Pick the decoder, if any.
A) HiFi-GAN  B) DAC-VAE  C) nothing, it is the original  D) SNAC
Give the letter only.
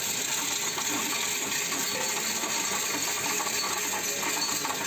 C